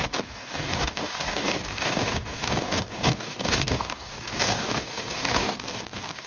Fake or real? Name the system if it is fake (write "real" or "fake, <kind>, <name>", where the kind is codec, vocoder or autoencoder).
fake, codec, DAC